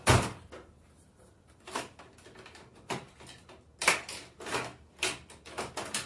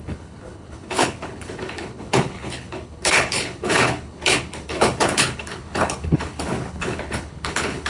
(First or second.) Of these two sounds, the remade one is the second